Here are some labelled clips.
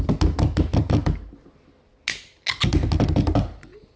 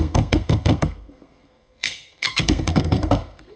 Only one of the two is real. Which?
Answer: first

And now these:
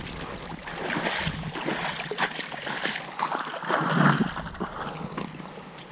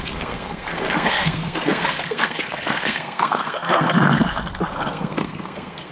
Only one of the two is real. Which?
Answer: first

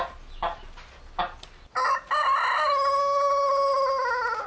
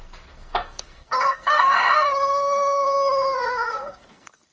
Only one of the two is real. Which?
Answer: first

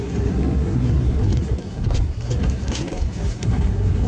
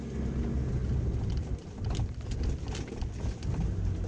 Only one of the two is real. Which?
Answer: second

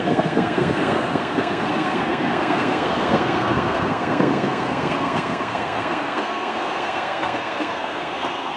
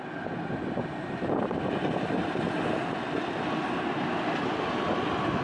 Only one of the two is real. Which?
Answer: second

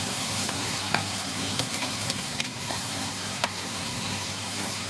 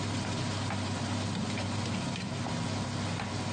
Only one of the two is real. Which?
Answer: second